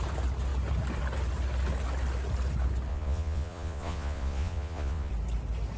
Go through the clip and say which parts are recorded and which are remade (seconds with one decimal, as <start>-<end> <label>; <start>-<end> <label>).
0.0-2.9 recorded; 2.9-5.1 remade; 5.1-5.8 recorded